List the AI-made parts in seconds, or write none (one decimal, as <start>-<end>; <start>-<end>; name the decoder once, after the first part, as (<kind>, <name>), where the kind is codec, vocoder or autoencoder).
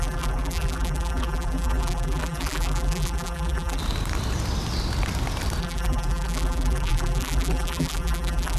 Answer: 0.0-3.8 (vocoder, BigVGAN v2); 5.6-8.6